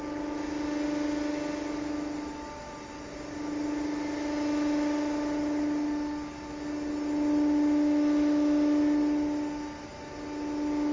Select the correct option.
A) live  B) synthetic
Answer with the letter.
A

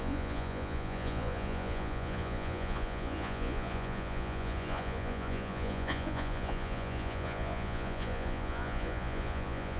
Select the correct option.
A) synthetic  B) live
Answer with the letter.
A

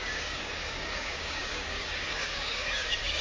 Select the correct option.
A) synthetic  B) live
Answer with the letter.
A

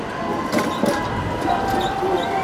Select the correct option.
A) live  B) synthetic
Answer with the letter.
A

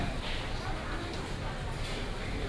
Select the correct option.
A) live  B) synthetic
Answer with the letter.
B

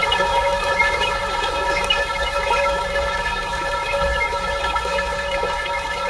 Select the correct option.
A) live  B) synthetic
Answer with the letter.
B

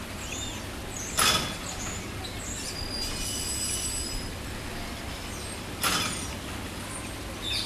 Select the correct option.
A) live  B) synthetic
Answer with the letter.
A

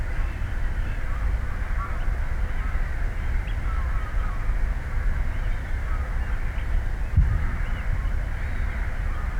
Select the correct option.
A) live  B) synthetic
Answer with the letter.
A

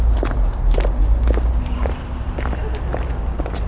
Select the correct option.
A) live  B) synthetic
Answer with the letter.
A